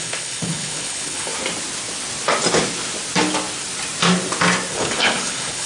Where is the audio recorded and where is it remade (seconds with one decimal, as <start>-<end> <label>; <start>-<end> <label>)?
0.0-1.3 remade; 1.3-4.7 recorded; 4.7-5.7 remade